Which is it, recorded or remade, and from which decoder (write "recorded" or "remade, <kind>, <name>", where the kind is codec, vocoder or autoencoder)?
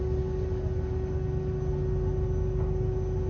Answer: recorded